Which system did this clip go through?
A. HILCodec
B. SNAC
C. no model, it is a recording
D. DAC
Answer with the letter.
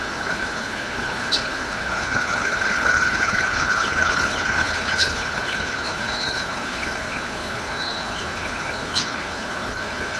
A